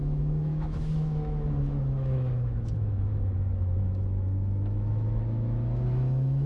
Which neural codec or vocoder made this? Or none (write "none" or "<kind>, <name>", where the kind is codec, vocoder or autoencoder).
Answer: autoencoder, DAC-VAE